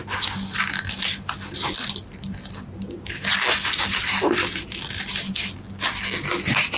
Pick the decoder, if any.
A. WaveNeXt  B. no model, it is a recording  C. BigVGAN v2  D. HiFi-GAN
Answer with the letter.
B